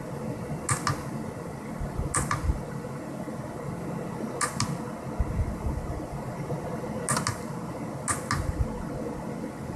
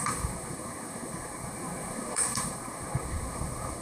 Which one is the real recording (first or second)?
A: first